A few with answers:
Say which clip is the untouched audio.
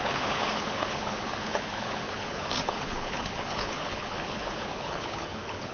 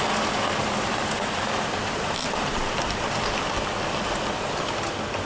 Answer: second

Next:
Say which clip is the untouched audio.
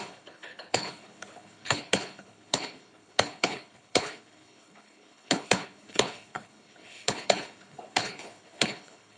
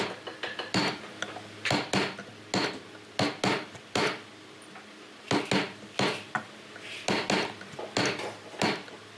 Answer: second